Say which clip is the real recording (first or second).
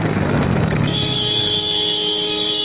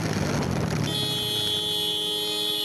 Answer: second